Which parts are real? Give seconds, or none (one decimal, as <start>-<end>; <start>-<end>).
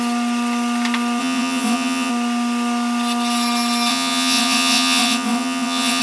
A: 0.0-1.2; 2.1-3.9